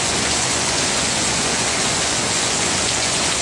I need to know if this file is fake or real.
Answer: fake